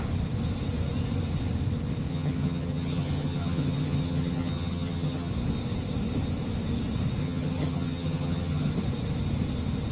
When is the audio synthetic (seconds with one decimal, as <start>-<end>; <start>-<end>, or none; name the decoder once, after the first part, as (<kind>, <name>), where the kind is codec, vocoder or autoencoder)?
2.1-5.3 (vocoder, HiFi-GAN); 7.2-8.7